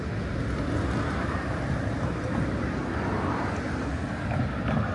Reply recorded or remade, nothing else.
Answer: recorded